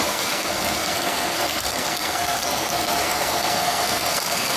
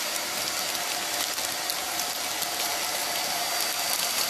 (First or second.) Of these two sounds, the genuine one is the second